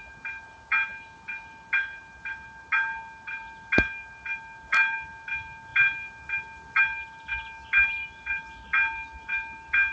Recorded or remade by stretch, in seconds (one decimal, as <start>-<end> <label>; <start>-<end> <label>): 0.0-9.9 recorded